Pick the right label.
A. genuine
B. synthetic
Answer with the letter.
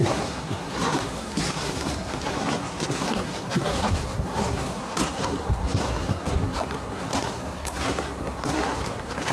B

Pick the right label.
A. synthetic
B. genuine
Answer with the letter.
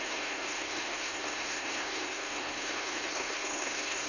A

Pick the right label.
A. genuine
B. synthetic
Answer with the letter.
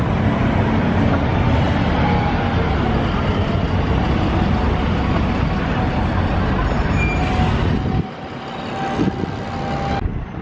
A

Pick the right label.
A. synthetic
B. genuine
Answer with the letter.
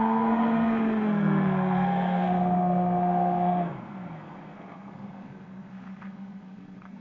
A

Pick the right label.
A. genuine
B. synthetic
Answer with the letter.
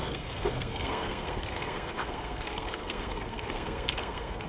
B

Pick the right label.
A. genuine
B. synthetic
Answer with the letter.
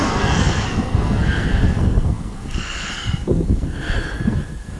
B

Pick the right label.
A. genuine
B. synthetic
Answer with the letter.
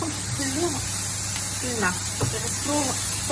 A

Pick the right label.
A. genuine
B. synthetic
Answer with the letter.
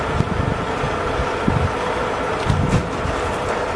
A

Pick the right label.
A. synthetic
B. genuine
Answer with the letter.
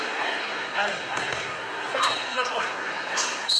A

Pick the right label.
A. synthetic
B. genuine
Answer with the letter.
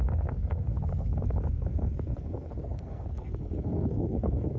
A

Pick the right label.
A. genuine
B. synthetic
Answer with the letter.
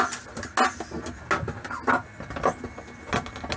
A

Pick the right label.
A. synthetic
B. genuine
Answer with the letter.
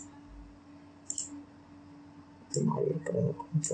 B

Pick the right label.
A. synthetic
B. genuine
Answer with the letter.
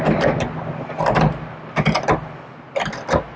B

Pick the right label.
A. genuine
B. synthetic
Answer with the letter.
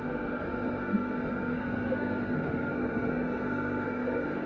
B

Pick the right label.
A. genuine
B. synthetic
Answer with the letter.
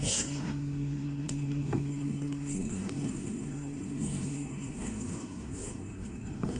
B